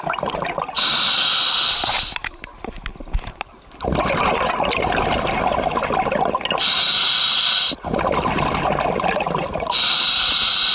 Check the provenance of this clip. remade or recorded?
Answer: recorded